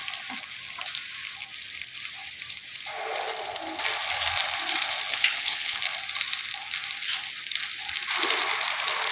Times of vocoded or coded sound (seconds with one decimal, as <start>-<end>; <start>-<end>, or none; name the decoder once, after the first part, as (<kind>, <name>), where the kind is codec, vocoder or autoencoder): 5.1-5.8 (codec, HILCodec)